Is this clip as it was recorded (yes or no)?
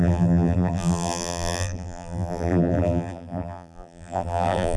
no